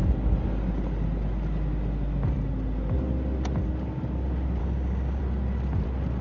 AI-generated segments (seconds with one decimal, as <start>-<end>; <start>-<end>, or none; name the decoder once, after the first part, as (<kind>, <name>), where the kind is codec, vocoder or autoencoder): 4.6-5.2 (codec, DAC)